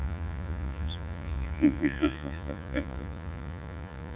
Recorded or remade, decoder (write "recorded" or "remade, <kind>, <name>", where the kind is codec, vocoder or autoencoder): remade, vocoder, Vocos